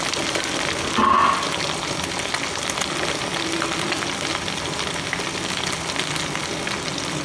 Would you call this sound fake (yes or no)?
no